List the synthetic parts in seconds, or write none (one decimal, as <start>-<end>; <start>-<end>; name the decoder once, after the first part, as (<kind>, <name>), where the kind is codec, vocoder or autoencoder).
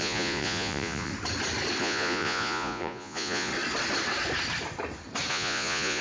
0.0-1.1 (vocoder, Vocos); 1.8-3.5; 5.3-6.0